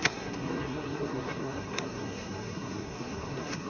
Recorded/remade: remade